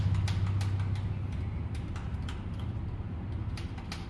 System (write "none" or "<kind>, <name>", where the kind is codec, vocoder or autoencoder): none